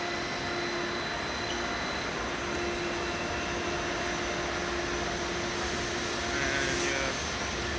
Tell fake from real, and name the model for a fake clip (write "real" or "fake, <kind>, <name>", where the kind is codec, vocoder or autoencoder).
real